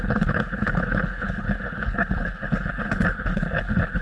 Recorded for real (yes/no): no